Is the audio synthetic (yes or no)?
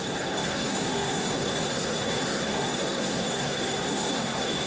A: yes